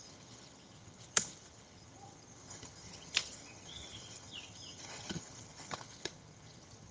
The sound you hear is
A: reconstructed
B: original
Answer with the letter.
A